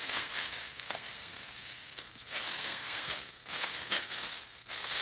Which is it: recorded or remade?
remade